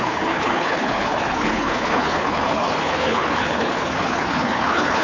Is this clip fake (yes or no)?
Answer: yes